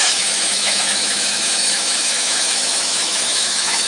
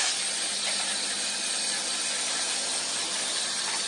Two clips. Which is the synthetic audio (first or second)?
first